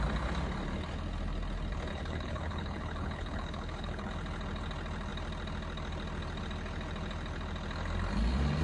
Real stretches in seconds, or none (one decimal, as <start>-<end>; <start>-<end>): 0.0-1.9; 4.1-8.6